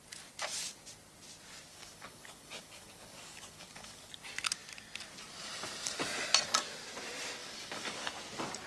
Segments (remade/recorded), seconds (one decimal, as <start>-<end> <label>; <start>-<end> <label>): 0.0-1.7 recorded; 1.7-4.1 remade; 4.1-7.4 recorded; 7.4-8.1 remade; 8.1-8.7 recorded

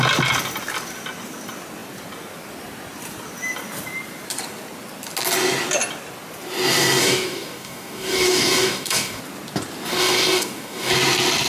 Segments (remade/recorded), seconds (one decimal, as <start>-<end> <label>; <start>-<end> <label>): 0.0-7.0 recorded; 7.0-9.2 remade; 9.2-9.9 recorded; 9.9-10.9 remade; 10.9-11.5 recorded

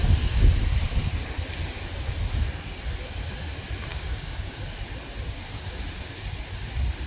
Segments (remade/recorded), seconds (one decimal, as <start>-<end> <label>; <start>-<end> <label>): 0.0-3.9 recorded; 3.9-4.6 remade; 4.6-7.1 recorded

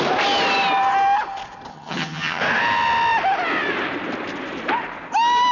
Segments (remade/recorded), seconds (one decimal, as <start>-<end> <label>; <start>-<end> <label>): 0.0-1.7 recorded; 1.7-2.4 remade; 2.4-5.5 recorded